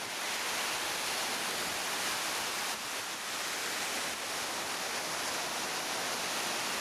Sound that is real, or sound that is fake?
real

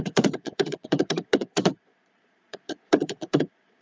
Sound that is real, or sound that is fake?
fake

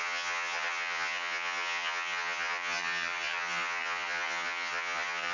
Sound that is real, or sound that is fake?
fake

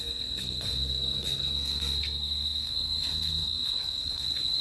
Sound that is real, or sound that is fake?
fake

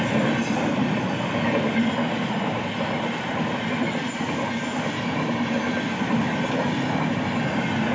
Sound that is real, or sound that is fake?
real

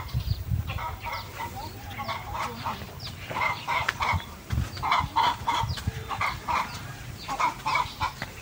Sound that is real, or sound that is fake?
fake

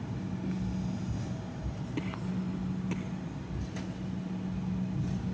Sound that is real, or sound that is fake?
real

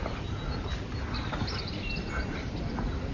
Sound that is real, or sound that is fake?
real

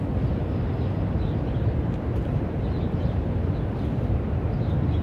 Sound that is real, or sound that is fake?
fake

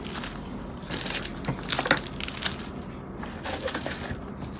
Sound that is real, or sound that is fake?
real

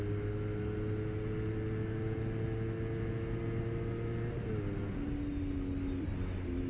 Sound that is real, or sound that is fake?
real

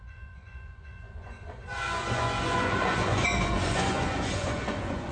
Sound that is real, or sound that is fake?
fake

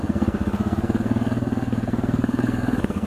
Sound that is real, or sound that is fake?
fake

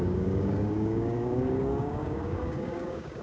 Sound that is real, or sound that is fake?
fake